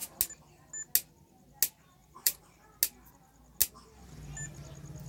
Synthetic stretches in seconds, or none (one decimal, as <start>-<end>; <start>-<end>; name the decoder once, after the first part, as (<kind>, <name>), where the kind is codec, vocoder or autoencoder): 2.0-2.6 (vocoder, BigVGAN v2)